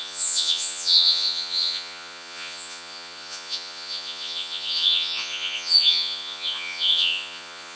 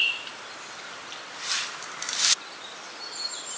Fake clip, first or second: first